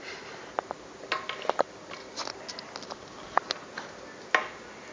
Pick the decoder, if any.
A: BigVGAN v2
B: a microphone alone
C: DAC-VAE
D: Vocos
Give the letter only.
B